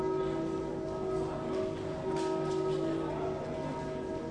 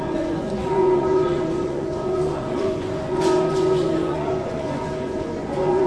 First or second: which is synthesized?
second